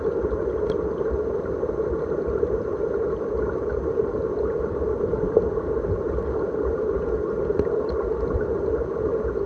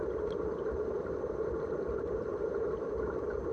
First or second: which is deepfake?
second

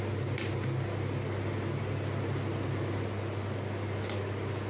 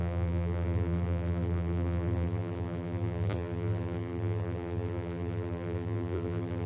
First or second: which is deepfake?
second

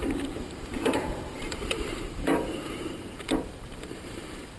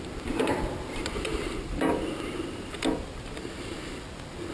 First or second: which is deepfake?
first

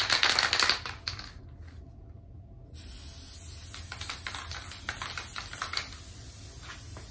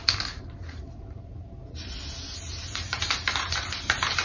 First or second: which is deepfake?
second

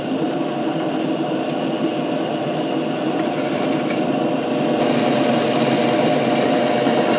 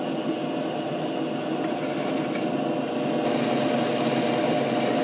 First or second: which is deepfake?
first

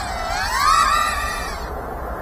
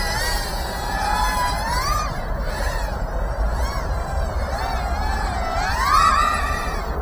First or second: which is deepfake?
second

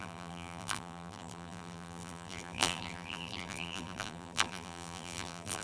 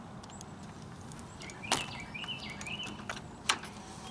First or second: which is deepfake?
first